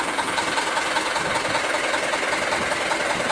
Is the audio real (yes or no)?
yes